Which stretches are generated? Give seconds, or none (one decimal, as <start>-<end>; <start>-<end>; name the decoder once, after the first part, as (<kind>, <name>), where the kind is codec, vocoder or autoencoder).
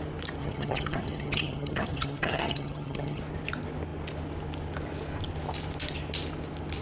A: 0.4-3.2 (vocoder, HiFi-GAN)